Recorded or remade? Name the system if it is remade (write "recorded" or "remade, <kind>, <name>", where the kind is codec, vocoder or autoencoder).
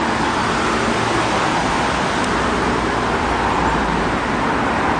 recorded